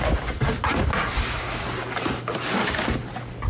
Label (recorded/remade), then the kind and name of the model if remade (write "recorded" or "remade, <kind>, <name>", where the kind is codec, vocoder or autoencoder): recorded